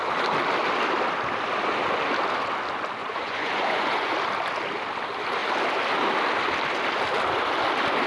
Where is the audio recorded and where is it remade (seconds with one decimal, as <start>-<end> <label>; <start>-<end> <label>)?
0.0-3.0 recorded; 3.0-4.1 remade; 4.1-8.1 recorded